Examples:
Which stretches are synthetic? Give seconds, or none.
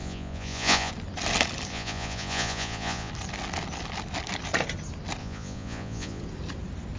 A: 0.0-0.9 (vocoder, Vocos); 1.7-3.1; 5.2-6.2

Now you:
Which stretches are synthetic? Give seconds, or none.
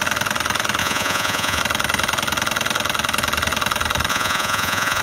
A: 0.8-1.6 (vocoder, Vocos); 4.1-5.0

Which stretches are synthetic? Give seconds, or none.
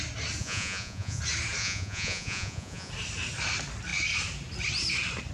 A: 0.4-1.2 (vocoder, Vocos); 1.6-2.9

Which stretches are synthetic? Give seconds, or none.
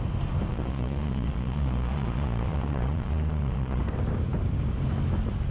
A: 0.5-3.8 (vocoder, Vocos)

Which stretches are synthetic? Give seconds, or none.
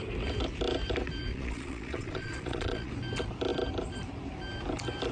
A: 1.3-2.9 (vocoder, Vocos)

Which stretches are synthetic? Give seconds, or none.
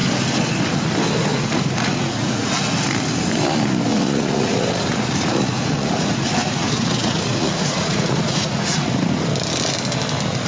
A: 1.3-2.5 (vocoder, Vocos); 3.9-8.9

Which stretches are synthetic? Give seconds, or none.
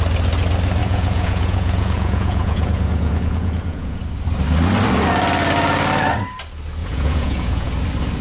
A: 0.8-4.0 (vocoder, Vocos); 6.8-7.7